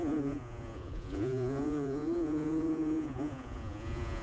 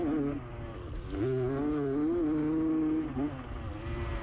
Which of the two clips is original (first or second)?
second